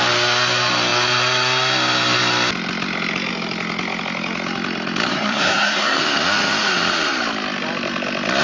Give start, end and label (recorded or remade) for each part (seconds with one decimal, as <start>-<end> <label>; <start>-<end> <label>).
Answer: 0.0-5.1 recorded; 5.1-6.0 remade; 6.0-8.4 recorded